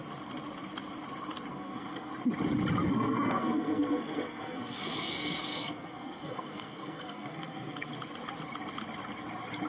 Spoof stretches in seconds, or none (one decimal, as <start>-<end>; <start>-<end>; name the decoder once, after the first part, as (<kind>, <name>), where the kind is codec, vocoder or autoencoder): 1.5-2.1 (codec, SNAC); 2.8-7.9